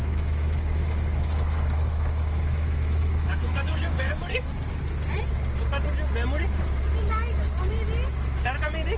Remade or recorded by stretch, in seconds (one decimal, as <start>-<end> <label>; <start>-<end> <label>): 0.0-4.5 remade; 4.5-9.0 recorded